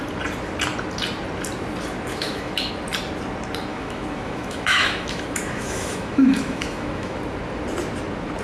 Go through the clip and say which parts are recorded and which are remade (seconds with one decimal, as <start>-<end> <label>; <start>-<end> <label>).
0.0-2.1 recorded; 2.1-2.7 remade; 2.7-3.7 recorded; 3.7-7.2 remade; 7.2-8.4 recorded